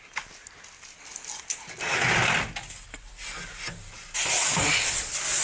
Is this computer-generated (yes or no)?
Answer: no